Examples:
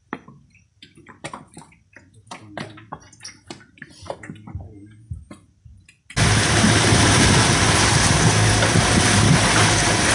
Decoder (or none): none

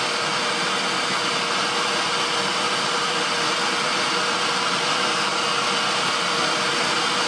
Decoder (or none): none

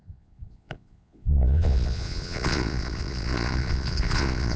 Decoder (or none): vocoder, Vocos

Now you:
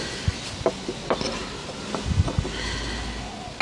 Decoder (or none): none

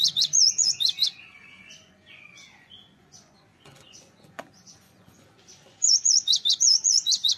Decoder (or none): vocoder, Vocos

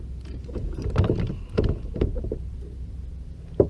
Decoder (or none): none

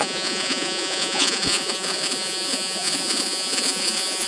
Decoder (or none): vocoder, Vocos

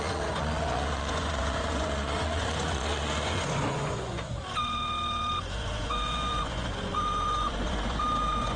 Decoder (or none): vocoder, Vocos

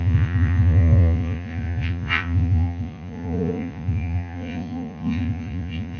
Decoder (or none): vocoder, Vocos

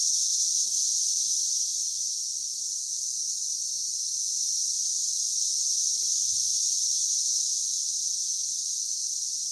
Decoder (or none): none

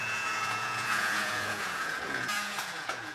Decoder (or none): vocoder, Vocos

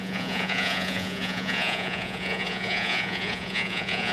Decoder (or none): vocoder, Vocos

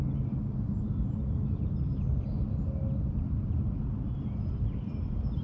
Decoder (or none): none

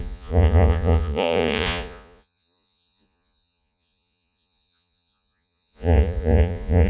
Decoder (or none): vocoder, Vocos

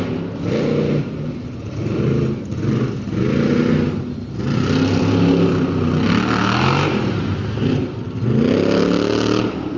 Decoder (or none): none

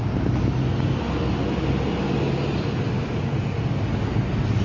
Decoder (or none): none